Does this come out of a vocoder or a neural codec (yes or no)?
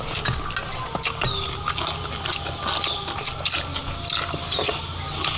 no